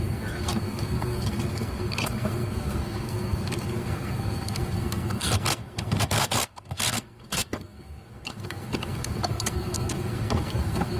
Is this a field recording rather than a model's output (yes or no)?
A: no